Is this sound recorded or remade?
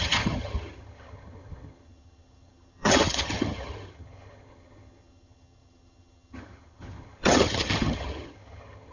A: remade